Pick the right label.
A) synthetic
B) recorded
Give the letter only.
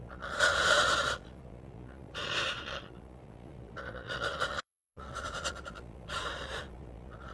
A